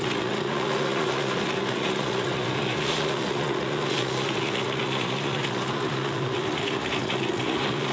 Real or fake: fake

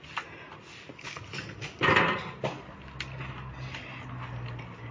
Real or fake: real